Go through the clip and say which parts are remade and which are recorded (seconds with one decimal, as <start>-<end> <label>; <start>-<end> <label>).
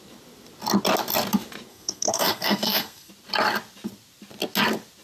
0.0-1.7 recorded; 1.7-3.1 remade; 3.1-5.0 recorded